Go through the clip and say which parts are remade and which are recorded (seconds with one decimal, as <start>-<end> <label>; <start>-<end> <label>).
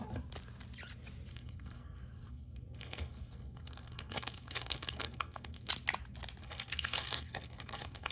0.0-1.3 recorded; 1.3-5.7 remade; 5.7-6.4 recorded; 6.4-8.1 remade